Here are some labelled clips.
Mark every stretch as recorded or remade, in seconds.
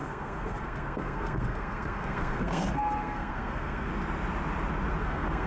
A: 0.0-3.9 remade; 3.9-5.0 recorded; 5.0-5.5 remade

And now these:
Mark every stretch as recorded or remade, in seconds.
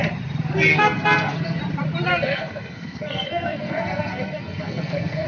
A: 0.0-0.7 recorded; 0.7-1.6 remade; 1.6-2.1 recorded; 2.1-5.3 remade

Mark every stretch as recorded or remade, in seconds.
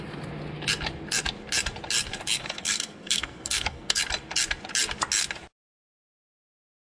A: 0.0-2.4 recorded; 2.4-4.0 remade; 4.0-6.9 recorded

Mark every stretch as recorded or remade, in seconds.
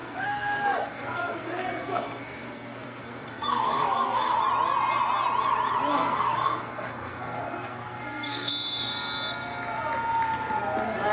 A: 0.0-4.4 remade; 4.4-5.9 recorded; 5.9-8.5 remade; 8.5-11.1 recorded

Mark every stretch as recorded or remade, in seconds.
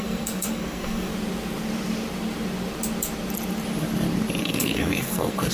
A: 0.0-1.1 remade; 1.1-4.4 recorded; 4.4-5.5 remade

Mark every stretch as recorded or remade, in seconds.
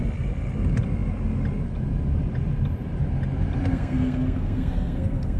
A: 0.0-3.7 recorded; 3.7-5.4 remade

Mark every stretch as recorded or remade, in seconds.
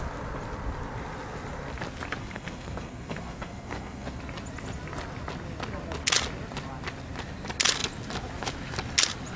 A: 0.0-2.2 recorded; 2.2-4.2 remade; 4.2-9.4 recorded